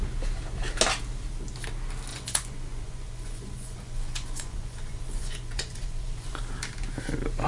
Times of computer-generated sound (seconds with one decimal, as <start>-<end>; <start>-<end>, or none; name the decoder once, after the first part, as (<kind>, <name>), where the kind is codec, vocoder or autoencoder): 2.1-6.4 (vocoder, Vocos)